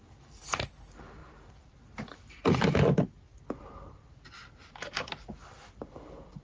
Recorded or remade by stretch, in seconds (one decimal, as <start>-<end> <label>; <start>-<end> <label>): 0.0-6.4 recorded

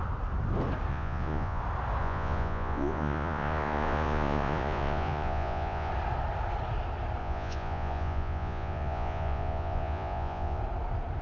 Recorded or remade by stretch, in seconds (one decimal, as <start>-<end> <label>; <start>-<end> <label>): 0.0-0.9 recorded; 0.9-1.6 remade; 1.6-2.0 recorded; 2.0-5.9 remade; 5.9-7.2 recorded; 7.2-10.6 remade; 10.6-11.2 recorded

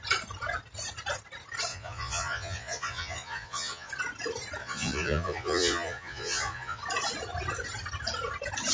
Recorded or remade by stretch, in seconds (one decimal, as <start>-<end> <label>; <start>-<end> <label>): 0.0-1.7 recorded; 1.7-3.9 remade; 3.9-4.6 recorded; 4.6-6.8 remade; 6.8-8.7 recorded

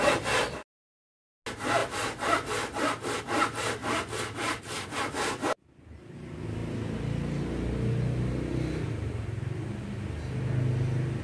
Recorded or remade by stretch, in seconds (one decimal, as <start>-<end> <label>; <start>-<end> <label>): 0.0-11.2 recorded